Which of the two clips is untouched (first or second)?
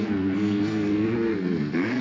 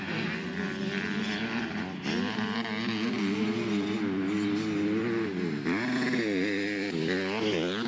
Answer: second